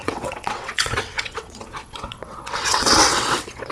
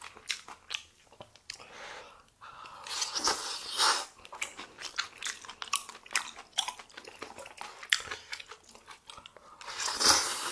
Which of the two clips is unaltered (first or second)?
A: second